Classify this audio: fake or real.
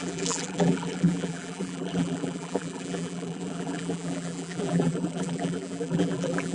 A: fake